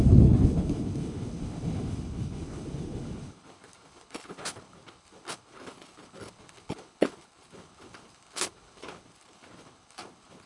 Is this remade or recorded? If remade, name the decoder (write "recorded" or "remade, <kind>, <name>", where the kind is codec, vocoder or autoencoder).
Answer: remade, codec, HILCodec